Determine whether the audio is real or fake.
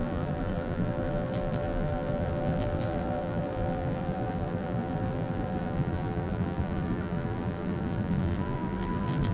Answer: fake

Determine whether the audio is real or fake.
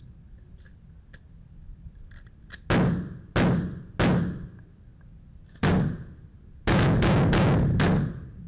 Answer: real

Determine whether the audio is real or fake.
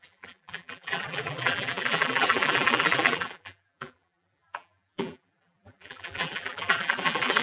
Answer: fake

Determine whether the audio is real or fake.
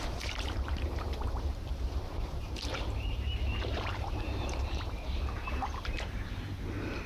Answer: fake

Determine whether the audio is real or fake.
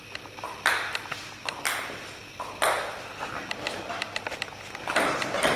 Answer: real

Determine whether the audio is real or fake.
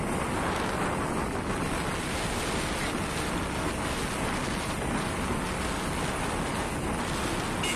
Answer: real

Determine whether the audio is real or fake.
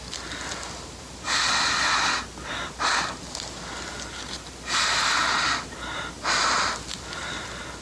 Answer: real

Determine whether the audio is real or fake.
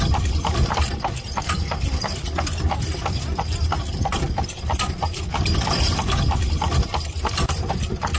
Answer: fake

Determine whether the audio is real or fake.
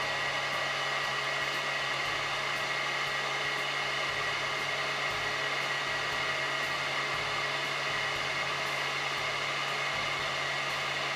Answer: real